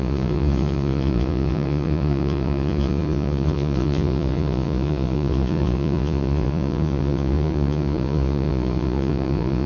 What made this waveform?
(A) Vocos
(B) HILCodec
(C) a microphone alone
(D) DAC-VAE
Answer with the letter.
A